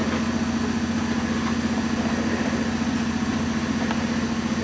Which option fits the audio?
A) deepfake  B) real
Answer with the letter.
B